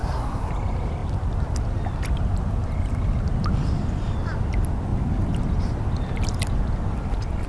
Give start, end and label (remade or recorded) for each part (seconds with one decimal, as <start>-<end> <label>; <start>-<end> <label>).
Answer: 0.0-0.5 remade; 0.5-7.5 recorded